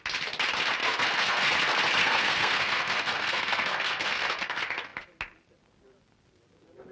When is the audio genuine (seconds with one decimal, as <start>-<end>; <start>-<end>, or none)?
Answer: 0.0-0.8; 1.5-2.0; 4.4-6.9